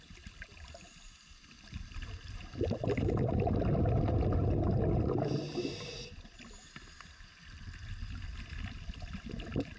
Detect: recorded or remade recorded